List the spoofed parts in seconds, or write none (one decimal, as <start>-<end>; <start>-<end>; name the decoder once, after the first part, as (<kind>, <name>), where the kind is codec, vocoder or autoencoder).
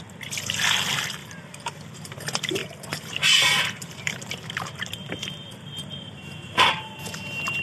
1.2-1.8 (vocoder, BigVGAN v2); 2.6-7.6